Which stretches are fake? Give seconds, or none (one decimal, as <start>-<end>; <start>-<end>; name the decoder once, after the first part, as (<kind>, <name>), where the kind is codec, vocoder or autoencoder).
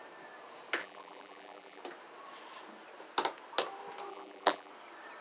0.8-1.8 (vocoder, BigVGAN v2); 4.1-4.7